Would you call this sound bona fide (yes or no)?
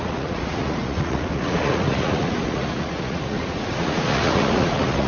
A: no